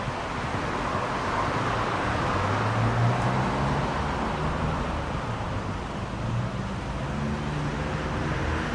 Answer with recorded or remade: recorded